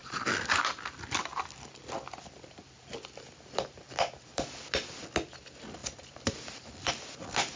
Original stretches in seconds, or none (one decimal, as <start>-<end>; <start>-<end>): 4.6-5.8; 6.9-7.6